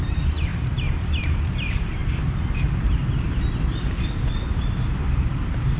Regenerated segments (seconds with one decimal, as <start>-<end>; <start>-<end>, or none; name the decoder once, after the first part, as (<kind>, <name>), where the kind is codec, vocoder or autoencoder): 0.0-3.0 (vocoder, BigVGAN v2); 4.6-5.8